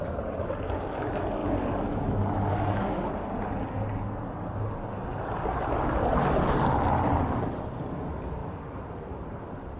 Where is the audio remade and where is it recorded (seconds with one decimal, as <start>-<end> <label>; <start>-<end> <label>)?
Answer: 0.0-1.4 recorded; 1.4-3.1 remade; 3.1-9.8 recorded